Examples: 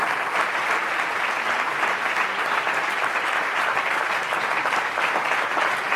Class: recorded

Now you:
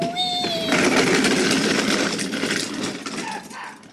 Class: recorded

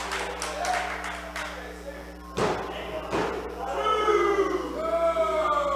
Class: recorded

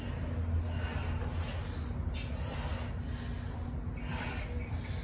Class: recorded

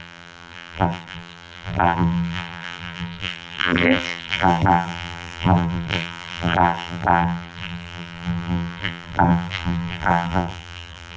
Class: remade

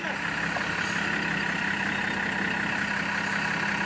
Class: recorded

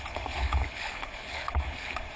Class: remade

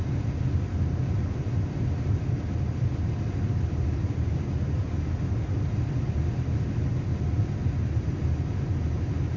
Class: recorded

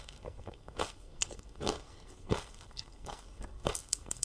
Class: remade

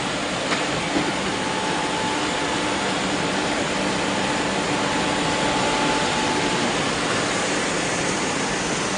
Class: recorded